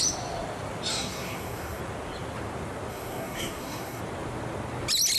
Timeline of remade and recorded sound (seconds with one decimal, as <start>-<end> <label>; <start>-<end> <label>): 0.0-0.9 recorded; 0.9-1.8 remade; 1.8-2.9 recorded; 2.9-4.0 remade; 4.0-5.2 recorded